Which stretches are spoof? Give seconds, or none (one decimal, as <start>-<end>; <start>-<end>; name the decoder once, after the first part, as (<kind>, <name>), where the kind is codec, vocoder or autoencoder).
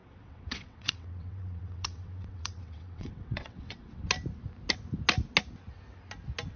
0.0-4.0 (vocoder, WaveNeXt)